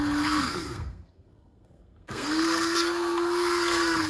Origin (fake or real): fake